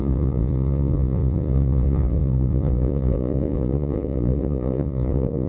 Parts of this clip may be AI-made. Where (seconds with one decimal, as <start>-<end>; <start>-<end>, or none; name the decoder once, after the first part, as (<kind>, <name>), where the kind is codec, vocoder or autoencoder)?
0.0-5.5 (vocoder, Vocos)